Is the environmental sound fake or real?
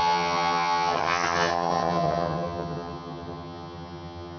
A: fake